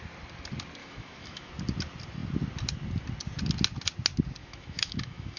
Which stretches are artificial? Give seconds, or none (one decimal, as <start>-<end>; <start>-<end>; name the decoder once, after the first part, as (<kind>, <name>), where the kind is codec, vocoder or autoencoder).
0.8-1.5 (autoencoder, DAC-VAE); 4.4-5.4